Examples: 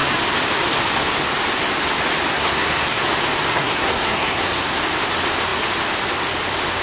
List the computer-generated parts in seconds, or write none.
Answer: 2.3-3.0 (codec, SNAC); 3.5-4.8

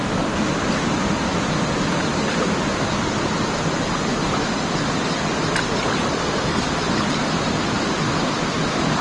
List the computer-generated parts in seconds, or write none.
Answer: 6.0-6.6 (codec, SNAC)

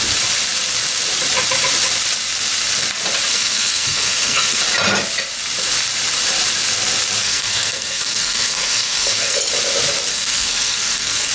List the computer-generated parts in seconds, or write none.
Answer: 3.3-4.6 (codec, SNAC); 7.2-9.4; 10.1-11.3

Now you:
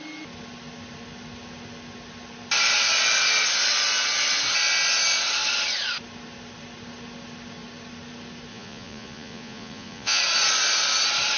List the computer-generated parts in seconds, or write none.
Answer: 8.5-10.2 (vocoder, Vocos)

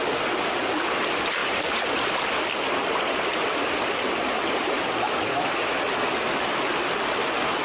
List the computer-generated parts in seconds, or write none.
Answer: none

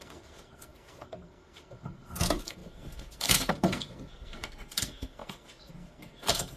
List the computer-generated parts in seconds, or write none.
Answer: 0.0-6.6 (codec, SNAC)

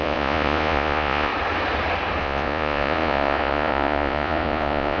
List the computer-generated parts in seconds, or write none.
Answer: 0.0-1.3 (vocoder, Vocos); 2.2-5.0